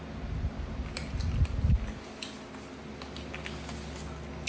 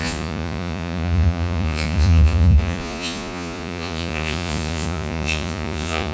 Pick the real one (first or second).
first